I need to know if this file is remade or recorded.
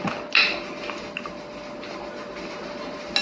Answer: recorded